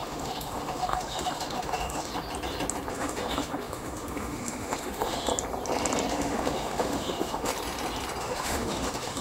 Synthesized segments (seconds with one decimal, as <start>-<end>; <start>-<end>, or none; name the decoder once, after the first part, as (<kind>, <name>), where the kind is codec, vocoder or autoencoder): 0.0-2.1 (autoencoder, DAC-VAE); 2.9-5.3; 6.1-7.5; 8.2-9.2